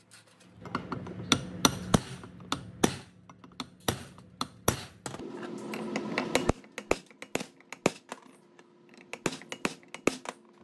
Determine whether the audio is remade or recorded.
recorded